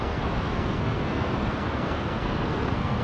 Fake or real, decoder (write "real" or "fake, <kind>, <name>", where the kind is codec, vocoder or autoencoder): fake, codec, SNAC